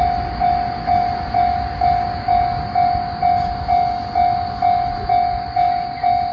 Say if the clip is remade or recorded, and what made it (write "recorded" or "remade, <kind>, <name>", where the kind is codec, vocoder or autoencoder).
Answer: recorded